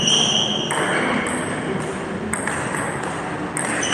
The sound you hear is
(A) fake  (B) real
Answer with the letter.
B